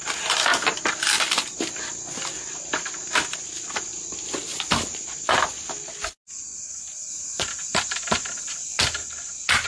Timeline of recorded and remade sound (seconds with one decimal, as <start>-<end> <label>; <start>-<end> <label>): 0.0-9.7 recorded